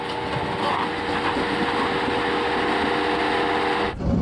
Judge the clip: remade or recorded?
recorded